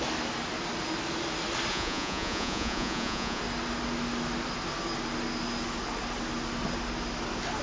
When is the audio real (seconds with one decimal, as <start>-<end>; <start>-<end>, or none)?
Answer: 0.0-1.7; 3.4-7.6